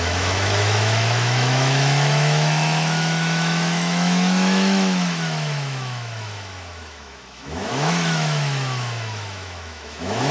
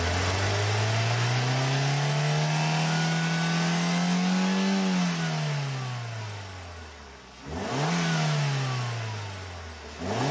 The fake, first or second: first